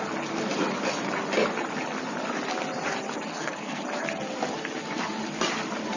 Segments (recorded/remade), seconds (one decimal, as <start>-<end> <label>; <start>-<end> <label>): 0.0-3.3 recorded; 3.3-3.8 remade; 3.8-6.0 recorded